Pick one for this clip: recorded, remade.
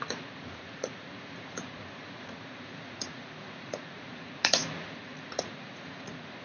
remade